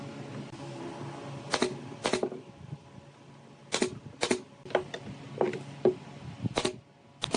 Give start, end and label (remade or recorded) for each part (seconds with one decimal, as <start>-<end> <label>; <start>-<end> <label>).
0.0-7.4 recorded